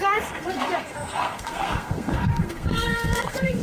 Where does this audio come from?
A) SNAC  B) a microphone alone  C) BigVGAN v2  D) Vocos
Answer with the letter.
A